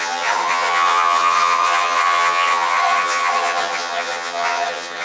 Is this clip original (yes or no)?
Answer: no